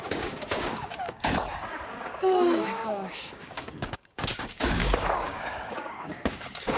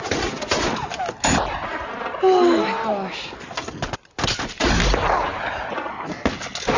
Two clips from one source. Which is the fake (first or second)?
first